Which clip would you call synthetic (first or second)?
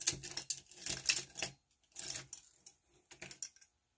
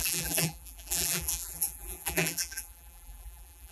second